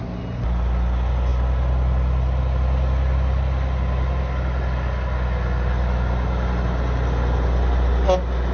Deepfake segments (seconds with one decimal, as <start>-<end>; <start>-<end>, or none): none